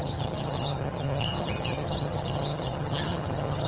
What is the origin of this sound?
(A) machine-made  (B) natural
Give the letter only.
A